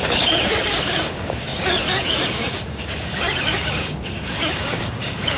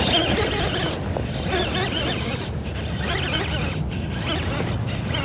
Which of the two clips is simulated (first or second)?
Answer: first